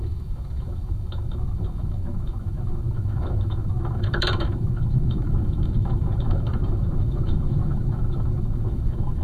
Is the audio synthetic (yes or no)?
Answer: yes